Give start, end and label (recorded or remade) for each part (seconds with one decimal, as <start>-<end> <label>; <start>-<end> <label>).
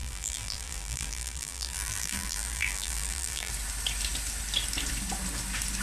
0.0-3.5 remade; 3.5-5.8 recorded